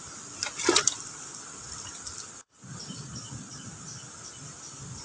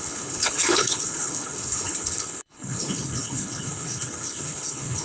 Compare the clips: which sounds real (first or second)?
first